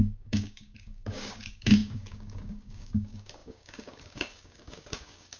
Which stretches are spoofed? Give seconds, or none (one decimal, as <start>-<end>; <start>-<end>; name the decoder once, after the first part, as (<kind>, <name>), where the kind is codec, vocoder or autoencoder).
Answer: 0.0-5.4 (codec, DAC)